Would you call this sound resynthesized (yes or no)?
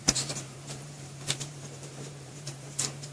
yes